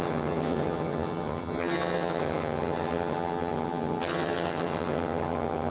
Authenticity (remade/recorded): remade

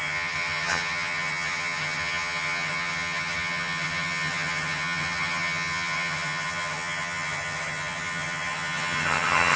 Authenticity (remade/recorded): remade